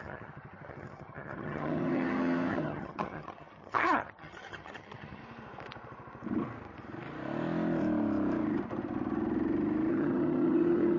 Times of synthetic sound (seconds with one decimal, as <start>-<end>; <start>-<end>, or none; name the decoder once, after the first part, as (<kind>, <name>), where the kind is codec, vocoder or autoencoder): 0.0-5.2 (vocoder, HiFi-GAN); 9.9-11.0